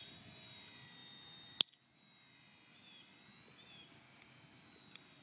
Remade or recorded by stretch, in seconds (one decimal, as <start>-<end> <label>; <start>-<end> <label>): 0.0-5.2 recorded

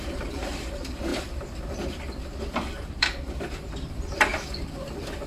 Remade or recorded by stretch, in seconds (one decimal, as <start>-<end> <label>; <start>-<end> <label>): 0.0-1.1 remade; 1.1-3.0 recorded; 3.0-4.3 remade; 4.3-5.3 recorded

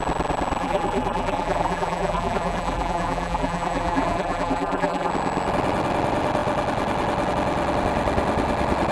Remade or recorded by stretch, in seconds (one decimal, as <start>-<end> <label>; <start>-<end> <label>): 0.0-0.6 recorded; 0.6-5.1 remade; 5.1-8.9 recorded